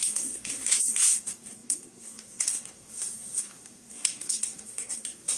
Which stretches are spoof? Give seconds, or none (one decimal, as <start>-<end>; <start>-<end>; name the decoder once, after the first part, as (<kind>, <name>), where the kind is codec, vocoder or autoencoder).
0.0-5.4 (codec, SNAC)